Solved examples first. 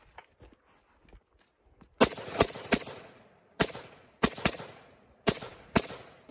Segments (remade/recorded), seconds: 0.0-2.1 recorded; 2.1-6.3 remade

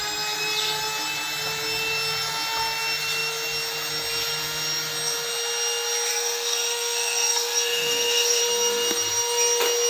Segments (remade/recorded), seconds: 0.0-6.1 recorded; 6.1-8.4 remade; 8.4-9.9 recorded

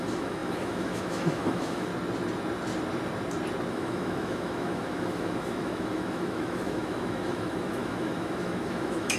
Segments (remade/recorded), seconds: 0.0-1.9 remade; 1.9-3.7 recorded; 3.7-9.2 remade

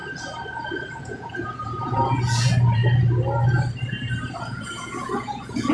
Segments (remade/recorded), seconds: 0.0-1.0 recorded; 1.0-2.8 remade; 2.8-4.4 recorded; 4.4-5.7 remade